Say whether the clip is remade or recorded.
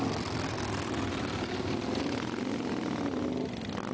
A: recorded